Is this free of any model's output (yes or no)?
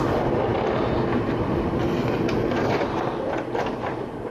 yes